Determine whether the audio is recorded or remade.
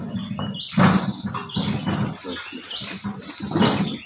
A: recorded